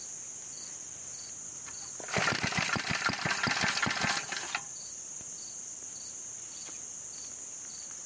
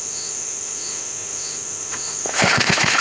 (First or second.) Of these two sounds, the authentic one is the first